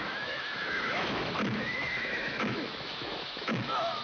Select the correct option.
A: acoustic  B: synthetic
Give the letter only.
B